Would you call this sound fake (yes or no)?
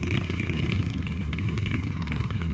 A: yes